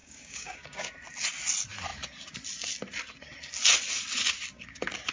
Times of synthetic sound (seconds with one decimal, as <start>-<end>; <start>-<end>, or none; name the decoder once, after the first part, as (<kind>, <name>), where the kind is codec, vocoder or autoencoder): 0.0-0.9 (codec, DAC)